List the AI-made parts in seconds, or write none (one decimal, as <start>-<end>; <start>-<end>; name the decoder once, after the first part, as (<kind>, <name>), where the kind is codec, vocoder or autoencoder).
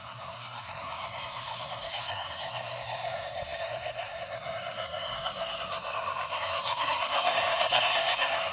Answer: 0.0-8.5 (codec, SNAC)